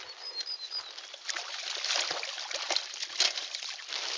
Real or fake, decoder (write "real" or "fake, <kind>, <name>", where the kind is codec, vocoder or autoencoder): real